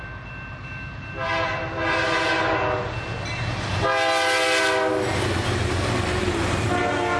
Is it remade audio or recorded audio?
recorded